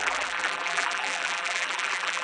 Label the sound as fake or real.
fake